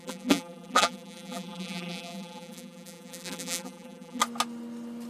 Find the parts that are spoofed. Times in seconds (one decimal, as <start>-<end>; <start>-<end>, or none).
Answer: 0.0-4.2